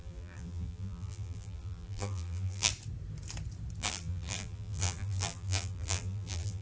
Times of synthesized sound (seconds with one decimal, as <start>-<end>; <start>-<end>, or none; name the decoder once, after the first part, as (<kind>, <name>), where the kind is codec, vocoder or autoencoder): 0.0-2.7 (vocoder, BigVGAN v2); 3.8-6.6